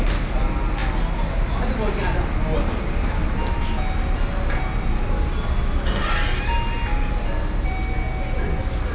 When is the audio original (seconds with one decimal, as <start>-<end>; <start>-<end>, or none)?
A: 0.0-8.9